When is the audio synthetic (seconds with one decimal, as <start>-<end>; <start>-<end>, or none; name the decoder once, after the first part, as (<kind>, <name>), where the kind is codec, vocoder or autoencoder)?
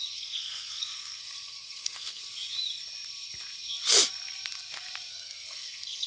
0.0-2.2 (codec, SNAC); 5.1-6.1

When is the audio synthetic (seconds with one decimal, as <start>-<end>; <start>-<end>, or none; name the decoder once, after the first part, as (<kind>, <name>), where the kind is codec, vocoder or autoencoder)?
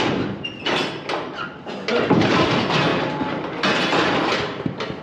none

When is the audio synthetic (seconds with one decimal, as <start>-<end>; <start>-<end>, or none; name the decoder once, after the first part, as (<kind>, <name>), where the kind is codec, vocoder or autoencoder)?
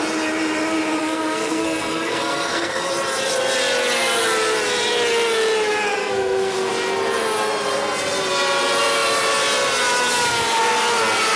1.0-2.9 (codec, SNAC); 6.0-6.7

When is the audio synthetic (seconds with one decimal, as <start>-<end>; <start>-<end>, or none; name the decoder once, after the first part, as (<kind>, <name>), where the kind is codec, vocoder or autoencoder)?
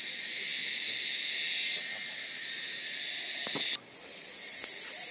none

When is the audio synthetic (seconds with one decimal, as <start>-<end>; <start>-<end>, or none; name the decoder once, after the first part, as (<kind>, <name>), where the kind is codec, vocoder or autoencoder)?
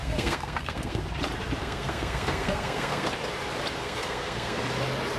0.0-1.0 (codec, SNAC); 1.6-3.1; 3.8-4.6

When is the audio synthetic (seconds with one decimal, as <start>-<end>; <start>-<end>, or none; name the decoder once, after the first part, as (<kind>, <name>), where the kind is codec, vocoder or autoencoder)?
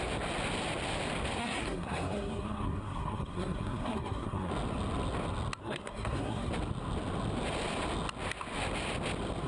1.4-4.5 (codec, SNAC); 5.6-6.5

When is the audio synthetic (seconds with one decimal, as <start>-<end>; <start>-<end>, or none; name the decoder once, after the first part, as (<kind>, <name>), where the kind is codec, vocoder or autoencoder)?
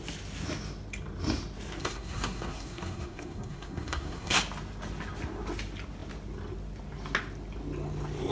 1.8-4.4 (codec, SNAC)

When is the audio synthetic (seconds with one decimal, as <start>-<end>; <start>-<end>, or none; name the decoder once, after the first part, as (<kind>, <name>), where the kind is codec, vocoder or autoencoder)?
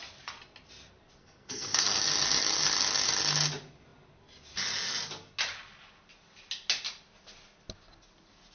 1.2-2.0 (codec, SNAC)